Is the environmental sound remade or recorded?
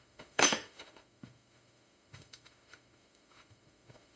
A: remade